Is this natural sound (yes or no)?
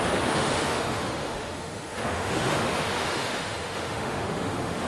no